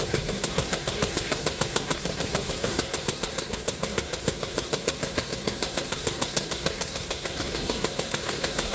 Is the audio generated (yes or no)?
yes